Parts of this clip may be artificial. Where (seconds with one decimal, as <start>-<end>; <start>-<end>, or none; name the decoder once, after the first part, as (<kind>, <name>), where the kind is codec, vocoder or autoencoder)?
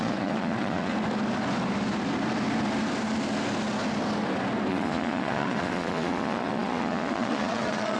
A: 0.0-0.9 (vocoder, Vocos); 4.7-8.0